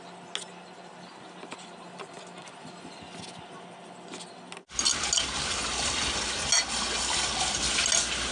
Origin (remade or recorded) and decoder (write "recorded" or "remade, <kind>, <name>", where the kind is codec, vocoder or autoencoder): recorded